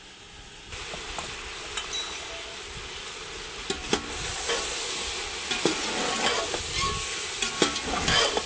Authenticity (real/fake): real